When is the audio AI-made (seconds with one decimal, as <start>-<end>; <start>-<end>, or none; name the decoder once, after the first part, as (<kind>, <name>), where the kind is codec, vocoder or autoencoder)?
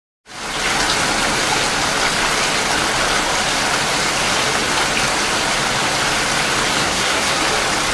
6.8-7.4 (codec, SNAC)